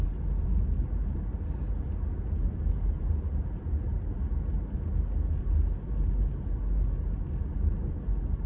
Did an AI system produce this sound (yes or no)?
no